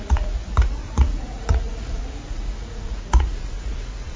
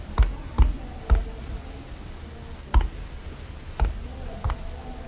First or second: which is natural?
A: second